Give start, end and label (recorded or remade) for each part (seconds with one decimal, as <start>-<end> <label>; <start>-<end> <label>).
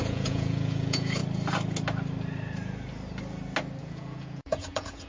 0.0-1.2 remade; 1.2-3.8 recorded; 3.8-5.1 remade